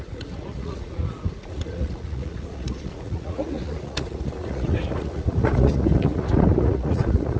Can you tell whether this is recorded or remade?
remade